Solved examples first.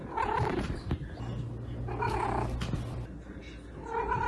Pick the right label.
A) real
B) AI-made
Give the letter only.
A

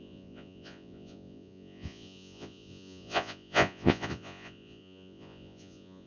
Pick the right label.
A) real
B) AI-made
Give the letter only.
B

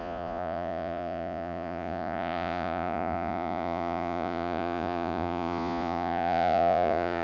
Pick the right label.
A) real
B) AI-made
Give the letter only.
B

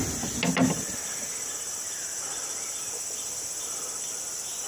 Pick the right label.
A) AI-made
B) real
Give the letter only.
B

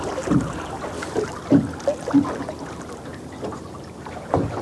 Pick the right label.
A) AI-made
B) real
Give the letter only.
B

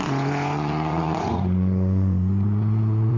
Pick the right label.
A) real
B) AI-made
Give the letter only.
B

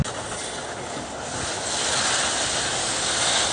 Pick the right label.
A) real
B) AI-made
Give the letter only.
A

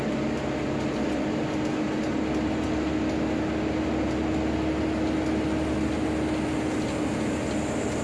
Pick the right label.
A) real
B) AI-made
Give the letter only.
A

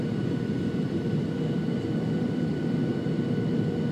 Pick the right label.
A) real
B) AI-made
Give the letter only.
A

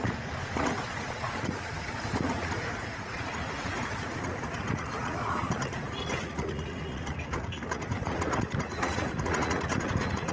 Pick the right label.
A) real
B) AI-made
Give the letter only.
B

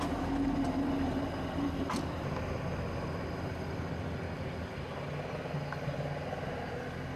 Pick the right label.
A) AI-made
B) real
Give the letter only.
B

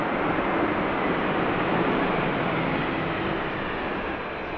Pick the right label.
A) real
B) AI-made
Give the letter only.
A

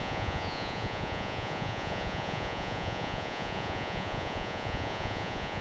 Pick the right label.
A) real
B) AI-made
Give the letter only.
B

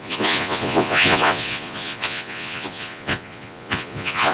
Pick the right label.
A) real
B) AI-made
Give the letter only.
B